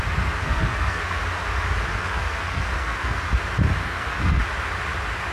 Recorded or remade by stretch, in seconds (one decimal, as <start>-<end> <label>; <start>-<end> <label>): 0.0-0.4 recorded; 0.4-1.2 remade; 1.2-1.9 recorded; 1.9-3.2 remade; 3.2-3.8 recorded; 3.8-4.4 remade; 4.4-5.3 recorded